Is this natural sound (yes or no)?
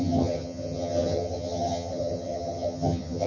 no